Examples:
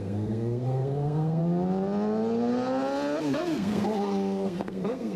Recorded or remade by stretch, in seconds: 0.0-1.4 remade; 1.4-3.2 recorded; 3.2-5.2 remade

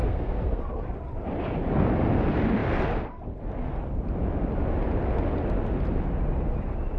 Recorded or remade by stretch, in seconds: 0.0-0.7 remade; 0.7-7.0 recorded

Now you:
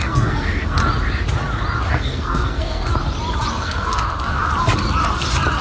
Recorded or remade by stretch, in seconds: 0.0-0.8 remade; 0.8-1.9 recorded; 1.9-2.9 remade; 2.9-3.5 recorded; 3.5-4.4 remade; 4.4-5.6 recorded

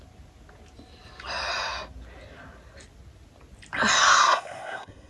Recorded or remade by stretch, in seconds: 0.0-4.1 recorded; 4.1-5.1 remade

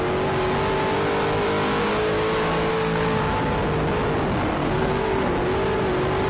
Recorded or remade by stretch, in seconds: 0.0-2.7 recorded; 2.7-3.2 remade; 3.2-4.5 recorded; 4.5-5.3 remade; 5.3-6.3 recorded

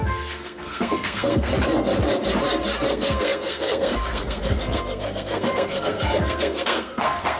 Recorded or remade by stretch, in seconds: 0.0-1.5 remade; 1.5-2.9 recorded; 2.9-7.4 remade

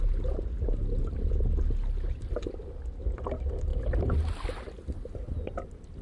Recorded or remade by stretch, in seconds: 0.0-6.0 recorded

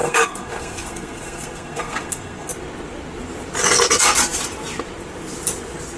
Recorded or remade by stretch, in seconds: 0.0-2.5 remade; 2.5-6.0 recorded